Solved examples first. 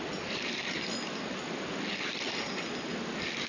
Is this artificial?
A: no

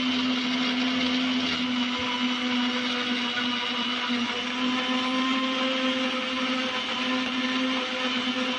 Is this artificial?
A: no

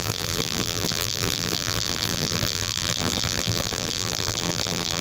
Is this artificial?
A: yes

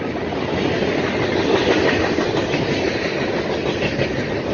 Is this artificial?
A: no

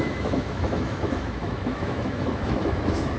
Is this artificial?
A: yes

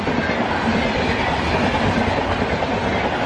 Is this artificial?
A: no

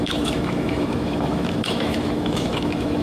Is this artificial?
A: yes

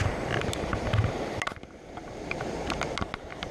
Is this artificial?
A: no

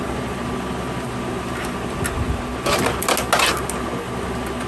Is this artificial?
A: no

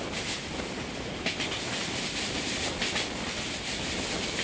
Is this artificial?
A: no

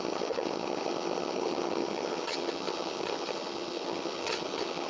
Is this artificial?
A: yes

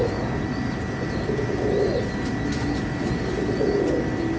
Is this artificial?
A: no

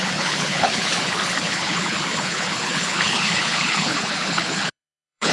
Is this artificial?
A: yes